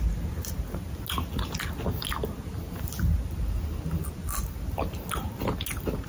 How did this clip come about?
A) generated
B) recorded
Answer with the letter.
B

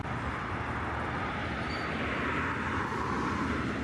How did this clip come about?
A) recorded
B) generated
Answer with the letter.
A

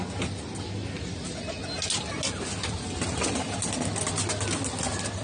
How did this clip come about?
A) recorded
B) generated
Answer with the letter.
A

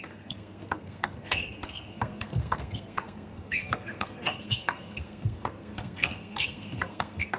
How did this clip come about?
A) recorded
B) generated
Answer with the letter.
B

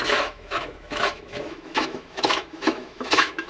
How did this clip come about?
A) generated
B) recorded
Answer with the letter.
A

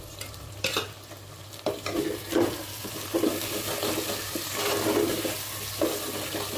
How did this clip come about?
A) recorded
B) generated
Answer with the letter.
A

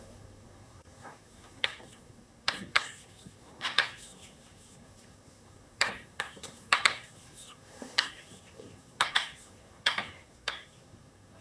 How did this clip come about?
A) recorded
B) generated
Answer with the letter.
B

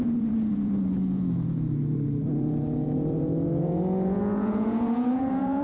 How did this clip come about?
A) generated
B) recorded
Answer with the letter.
A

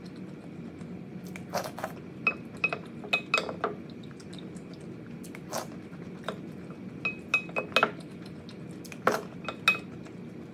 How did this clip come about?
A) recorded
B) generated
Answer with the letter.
A